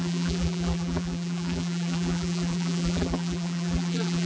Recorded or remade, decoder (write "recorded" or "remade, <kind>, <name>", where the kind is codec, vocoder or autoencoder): remade, vocoder, BigVGAN v2